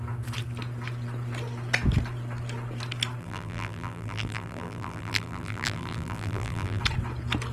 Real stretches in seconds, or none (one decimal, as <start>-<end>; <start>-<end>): 0.0-3.2; 6.8-7.5